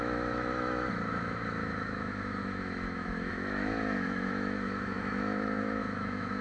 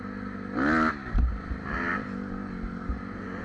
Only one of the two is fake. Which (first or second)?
first